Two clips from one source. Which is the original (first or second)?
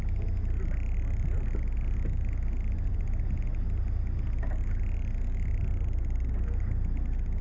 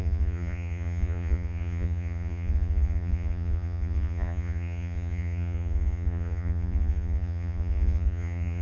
first